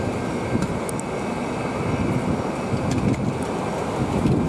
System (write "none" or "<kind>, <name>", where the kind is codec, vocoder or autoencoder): none